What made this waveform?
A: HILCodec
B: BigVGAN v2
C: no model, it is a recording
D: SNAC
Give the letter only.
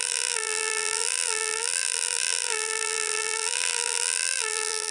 B